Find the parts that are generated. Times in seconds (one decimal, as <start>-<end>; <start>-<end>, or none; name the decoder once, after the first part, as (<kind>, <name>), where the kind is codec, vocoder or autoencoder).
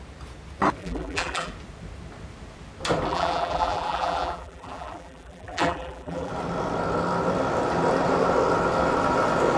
0.8-1.5 (vocoder, BigVGAN v2); 3.1-6.3